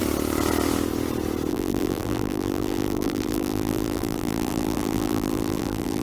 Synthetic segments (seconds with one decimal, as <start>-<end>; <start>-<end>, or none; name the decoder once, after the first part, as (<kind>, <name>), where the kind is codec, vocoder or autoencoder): 1.5-6.0 (vocoder, BigVGAN v2)